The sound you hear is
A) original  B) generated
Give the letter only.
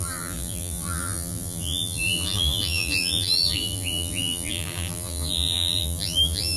B